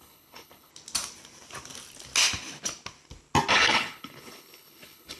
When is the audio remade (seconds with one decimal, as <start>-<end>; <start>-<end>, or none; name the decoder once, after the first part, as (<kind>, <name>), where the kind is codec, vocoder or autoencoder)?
0.0-0.7 (codec, HILCodec); 3.5-5.2